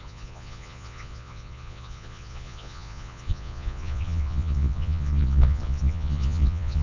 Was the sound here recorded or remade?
remade